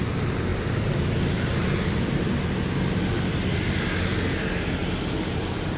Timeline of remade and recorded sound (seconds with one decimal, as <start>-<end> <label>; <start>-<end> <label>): 0.0-5.8 recorded